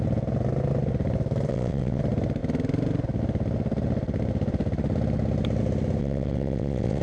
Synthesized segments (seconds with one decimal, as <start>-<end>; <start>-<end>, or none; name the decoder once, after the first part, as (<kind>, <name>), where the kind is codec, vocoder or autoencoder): 1.5-2.0 (vocoder, WaveNeXt); 6.0-7.0

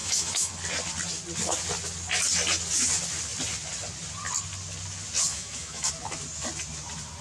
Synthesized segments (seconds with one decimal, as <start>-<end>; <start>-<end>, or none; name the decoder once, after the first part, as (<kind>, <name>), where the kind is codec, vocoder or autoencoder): 0.0-0.5 (autoencoder, DAC-VAE); 5.3-5.9

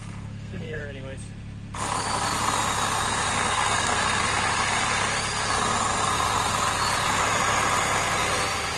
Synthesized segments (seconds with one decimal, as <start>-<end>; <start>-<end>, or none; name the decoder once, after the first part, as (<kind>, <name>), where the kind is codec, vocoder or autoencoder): 0.0-0.8 (codec, SNAC); 3.5-4.0

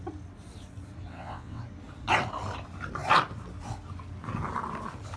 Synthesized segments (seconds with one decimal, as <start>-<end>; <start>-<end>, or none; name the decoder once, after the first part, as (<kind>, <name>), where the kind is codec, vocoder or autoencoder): 1.1-1.6 (vocoder, WaveNeXt)

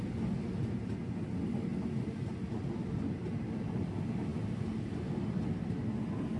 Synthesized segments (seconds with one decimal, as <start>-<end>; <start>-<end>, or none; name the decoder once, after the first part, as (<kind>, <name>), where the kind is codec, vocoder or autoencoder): 0.0-6.4 (vocoder, BigVGAN v2)

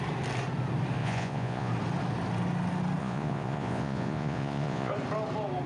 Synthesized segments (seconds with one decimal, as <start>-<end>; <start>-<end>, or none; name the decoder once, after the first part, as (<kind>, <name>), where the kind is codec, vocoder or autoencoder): 1.0-1.7 (vocoder, Vocos); 3.0-4.9